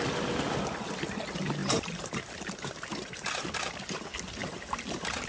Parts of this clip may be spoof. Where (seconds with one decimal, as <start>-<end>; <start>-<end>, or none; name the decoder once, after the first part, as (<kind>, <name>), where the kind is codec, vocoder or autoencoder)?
1.6-3.8 (vocoder, BigVGAN v2); 4.4-5.3